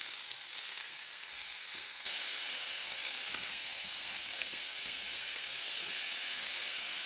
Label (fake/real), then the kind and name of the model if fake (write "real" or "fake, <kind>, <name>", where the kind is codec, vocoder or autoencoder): fake, codec, SNAC